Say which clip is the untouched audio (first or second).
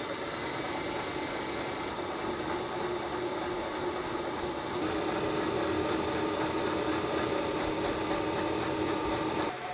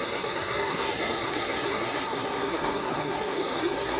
first